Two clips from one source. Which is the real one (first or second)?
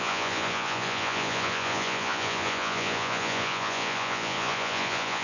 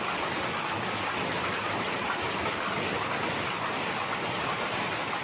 second